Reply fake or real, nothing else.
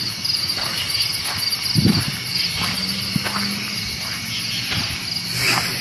real